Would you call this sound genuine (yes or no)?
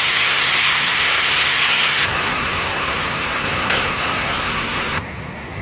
no